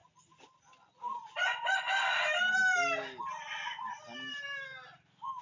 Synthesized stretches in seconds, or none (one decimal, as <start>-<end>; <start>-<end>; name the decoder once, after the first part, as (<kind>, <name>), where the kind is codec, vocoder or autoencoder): none